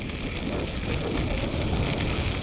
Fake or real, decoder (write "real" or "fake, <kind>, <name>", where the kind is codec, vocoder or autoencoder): real